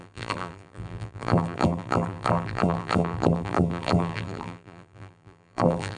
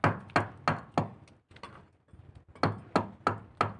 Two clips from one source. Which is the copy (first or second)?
first